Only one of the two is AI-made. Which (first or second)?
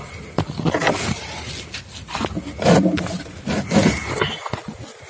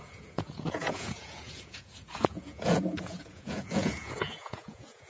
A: second